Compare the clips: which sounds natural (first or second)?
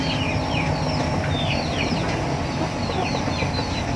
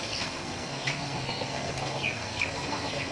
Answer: first